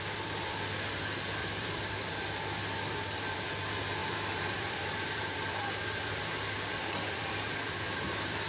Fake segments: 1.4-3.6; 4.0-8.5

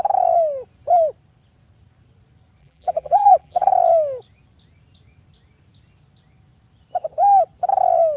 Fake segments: 2.6-3.7